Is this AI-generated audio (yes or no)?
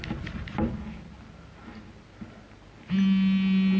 no